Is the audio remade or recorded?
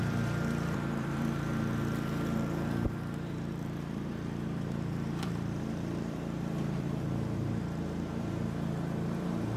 remade